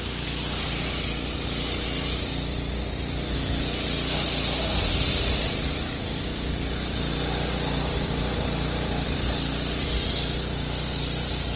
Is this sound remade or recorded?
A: recorded